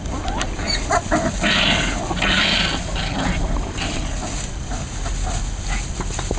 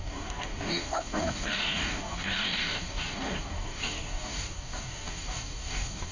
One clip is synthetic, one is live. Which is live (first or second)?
first